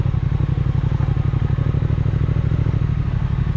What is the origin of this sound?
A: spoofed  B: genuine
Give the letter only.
B